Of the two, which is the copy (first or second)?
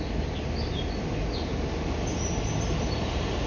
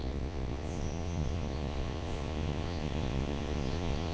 second